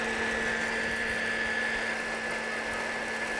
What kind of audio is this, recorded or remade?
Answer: recorded